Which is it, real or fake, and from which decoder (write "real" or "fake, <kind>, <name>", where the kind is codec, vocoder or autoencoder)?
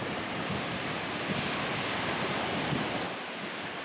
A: real